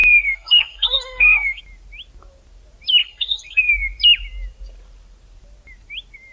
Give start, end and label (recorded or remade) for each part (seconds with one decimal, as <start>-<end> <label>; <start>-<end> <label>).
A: 0.0-1.6 remade; 1.6-3.0 recorded; 3.0-3.7 remade; 3.7-6.3 recorded